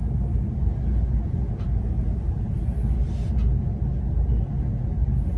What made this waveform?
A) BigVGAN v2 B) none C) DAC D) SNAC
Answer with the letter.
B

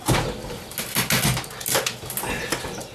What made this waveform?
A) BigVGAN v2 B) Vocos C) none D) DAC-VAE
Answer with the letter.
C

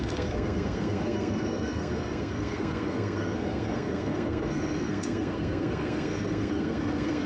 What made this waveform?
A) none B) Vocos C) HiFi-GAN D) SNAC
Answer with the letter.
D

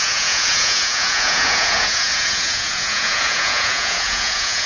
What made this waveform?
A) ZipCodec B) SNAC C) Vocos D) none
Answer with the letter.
C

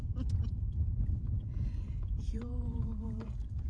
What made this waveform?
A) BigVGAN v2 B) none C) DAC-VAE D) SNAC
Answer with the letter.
A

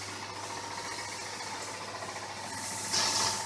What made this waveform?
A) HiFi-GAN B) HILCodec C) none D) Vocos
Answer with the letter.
C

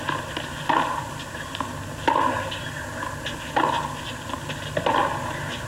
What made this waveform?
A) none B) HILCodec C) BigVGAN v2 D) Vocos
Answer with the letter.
A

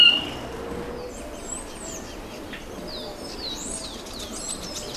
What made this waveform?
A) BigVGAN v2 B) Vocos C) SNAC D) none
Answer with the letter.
D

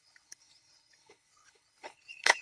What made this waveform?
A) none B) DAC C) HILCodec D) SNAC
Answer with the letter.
C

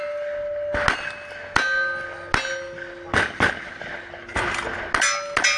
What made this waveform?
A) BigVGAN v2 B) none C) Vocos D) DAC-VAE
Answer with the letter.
B